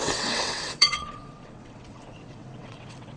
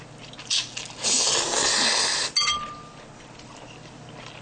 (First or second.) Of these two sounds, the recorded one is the second